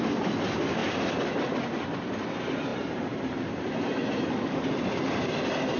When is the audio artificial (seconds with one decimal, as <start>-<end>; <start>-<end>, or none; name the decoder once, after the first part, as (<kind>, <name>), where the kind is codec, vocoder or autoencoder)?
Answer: none